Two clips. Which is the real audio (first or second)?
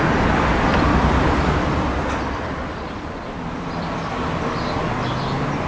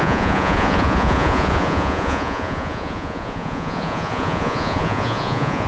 first